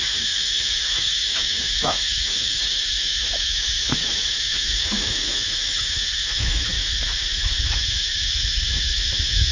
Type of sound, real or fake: fake